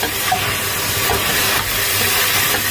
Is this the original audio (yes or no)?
yes